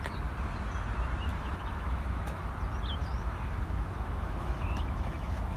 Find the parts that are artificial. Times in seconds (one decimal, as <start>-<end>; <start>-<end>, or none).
1.3-2.5; 3.0-5.6